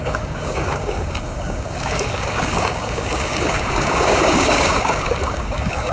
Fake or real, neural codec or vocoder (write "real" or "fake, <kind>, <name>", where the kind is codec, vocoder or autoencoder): fake, codec, DAC